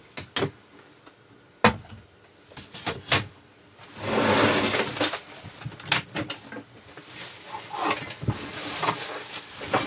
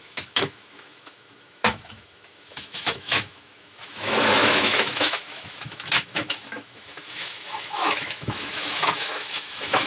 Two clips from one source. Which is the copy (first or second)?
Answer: second